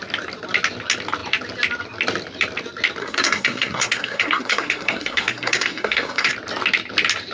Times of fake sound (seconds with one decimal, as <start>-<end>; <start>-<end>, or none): 3.0-6.3